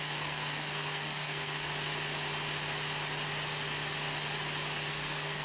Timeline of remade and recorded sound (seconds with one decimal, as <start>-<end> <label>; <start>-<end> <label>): 0.0-1.7 remade; 1.7-4.9 recorded; 4.9-5.4 remade